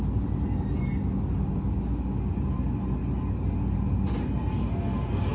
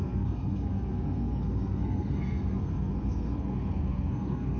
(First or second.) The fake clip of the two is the second